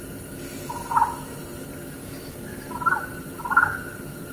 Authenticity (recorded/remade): recorded